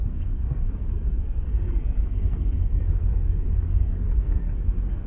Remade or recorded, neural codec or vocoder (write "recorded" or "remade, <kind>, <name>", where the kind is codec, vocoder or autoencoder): remade, codec, SNAC